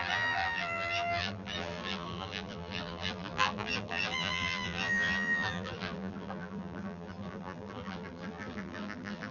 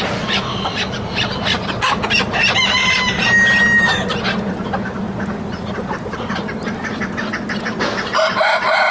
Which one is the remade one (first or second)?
first